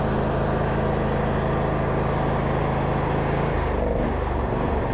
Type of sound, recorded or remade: recorded